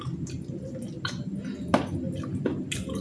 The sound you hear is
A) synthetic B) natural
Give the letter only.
B